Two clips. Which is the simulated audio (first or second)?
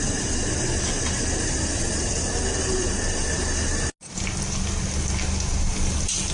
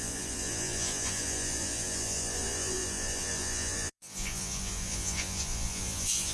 second